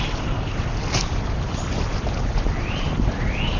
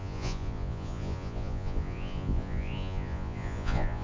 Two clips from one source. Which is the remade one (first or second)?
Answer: second